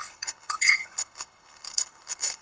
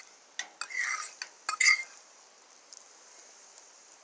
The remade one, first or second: first